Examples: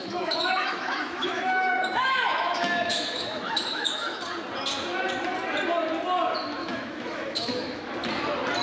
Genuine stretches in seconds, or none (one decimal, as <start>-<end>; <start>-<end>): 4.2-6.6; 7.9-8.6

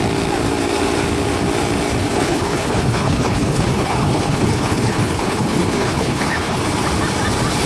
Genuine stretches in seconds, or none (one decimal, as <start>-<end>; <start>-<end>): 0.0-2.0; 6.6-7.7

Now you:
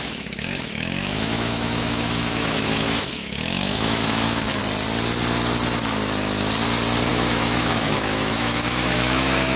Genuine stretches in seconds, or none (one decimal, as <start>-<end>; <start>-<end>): 4.6-7.1

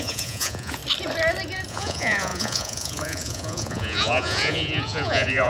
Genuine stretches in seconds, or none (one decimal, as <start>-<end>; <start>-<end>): 0.8-1.7